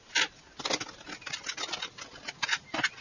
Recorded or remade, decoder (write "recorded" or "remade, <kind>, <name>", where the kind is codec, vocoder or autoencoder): recorded